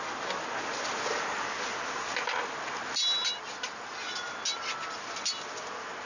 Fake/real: real